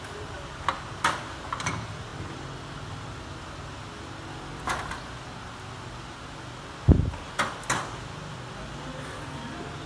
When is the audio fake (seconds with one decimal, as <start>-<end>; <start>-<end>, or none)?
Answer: none